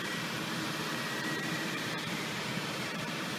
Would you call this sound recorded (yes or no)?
no